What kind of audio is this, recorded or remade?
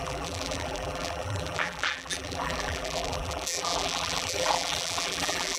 remade